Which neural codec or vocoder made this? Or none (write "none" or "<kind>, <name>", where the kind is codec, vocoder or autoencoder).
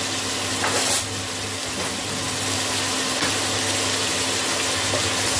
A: none